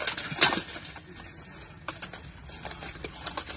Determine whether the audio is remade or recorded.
recorded